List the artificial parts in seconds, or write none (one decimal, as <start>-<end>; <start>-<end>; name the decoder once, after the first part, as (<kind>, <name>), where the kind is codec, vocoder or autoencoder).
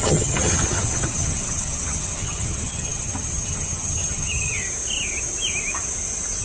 0.0-4.6 (vocoder, HiFi-GAN)